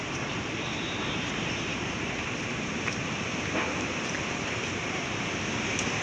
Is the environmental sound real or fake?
fake